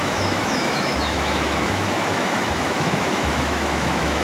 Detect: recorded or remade remade